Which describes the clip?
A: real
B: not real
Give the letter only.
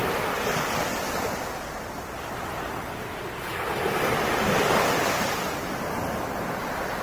A